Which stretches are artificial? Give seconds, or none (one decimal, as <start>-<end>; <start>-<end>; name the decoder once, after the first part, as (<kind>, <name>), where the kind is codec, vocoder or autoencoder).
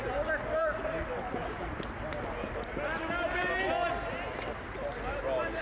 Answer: none